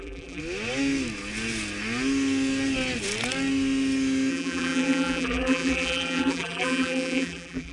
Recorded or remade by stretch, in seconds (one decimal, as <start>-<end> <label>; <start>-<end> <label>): 0.0-0.4 remade; 0.4-4.3 recorded; 4.3-7.7 remade